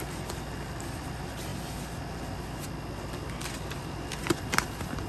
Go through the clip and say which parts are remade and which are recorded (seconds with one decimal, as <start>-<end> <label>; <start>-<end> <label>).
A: 0.0-5.1 recorded